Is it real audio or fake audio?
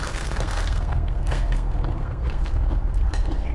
fake